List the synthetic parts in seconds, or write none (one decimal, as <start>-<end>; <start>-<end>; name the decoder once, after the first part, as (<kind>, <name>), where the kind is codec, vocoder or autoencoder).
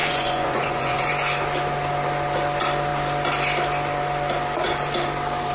0.0-1.1 (vocoder, Vocos)